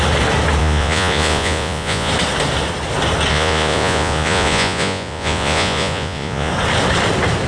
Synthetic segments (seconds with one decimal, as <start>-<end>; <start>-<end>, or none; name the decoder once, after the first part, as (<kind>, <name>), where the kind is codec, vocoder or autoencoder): 0.6-2.1 (vocoder, Vocos); 3.3-6.5